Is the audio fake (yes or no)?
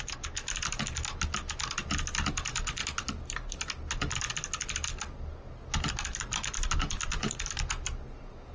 no